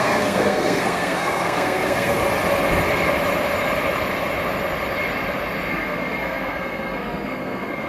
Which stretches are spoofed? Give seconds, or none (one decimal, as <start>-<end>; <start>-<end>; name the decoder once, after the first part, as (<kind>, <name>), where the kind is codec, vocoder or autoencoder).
0.0-2.2 (codec, SNAC); 5.7-7.9